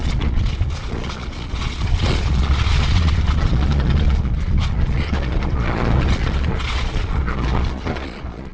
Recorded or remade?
remade